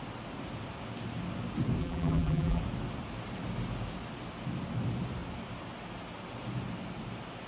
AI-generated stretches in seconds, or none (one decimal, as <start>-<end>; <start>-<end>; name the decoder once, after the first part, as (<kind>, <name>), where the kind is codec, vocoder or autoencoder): 1.8-2.6 (vocoder, BigVGAN v2)